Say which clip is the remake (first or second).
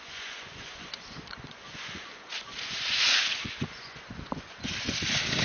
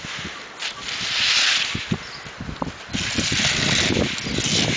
first